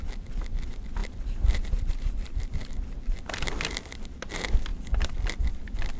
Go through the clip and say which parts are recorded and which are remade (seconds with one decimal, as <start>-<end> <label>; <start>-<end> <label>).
0.0-6.0 recorded